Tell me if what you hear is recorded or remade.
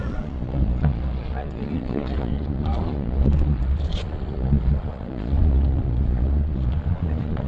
remade